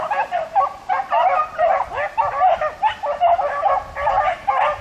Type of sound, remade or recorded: recorded